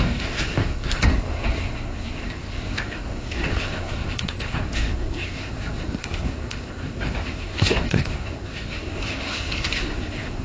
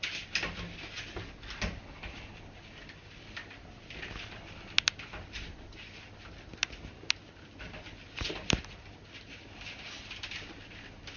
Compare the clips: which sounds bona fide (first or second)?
second